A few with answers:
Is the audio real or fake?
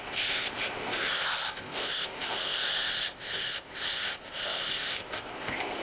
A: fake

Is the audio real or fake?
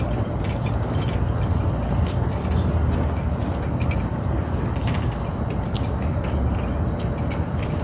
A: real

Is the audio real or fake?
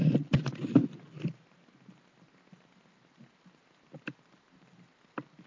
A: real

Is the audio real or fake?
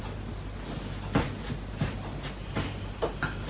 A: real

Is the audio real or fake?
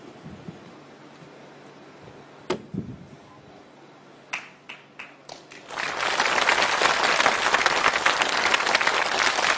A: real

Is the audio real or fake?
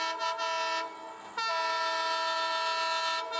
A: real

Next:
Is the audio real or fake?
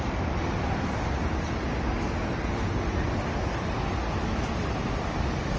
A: real